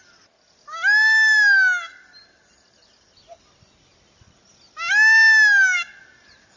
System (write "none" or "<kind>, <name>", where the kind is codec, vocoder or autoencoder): none